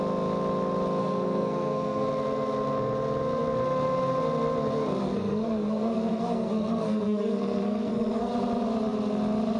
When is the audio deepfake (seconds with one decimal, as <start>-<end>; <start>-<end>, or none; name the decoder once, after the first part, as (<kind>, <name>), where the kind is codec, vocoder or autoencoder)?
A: 1.0-2.1 (codec, SNAC); 5.0-8.3